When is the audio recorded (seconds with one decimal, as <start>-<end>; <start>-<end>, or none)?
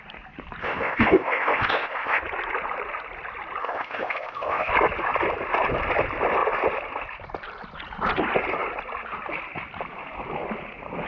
0.0-0.6; 2.2-3.6; 4.7-11.1